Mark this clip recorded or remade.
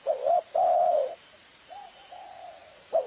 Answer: remade